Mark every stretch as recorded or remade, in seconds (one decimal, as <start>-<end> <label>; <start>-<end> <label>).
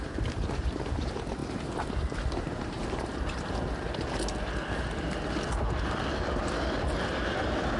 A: 0.0-7.8 recorded